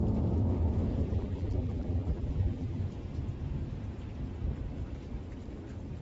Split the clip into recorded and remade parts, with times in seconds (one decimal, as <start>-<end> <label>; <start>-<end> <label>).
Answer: 0.0-1.0 recorded; 1.0-2.8 remade; 2.8-6.0 recorded